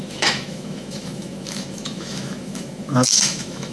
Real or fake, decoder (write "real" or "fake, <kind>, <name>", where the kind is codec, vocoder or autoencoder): fake, autoencoder, DAC-VAE